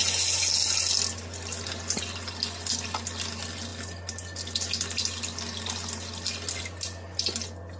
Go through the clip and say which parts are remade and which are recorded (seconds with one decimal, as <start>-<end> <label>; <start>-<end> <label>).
0.0-7.8 recorded